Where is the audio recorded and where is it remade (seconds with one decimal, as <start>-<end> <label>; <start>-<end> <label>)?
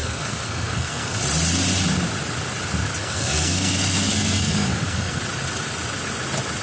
0.0-1.2 remade; 1.2-3.0 recorded; 3.0-5.2 remade; 5.2-6.6 recorded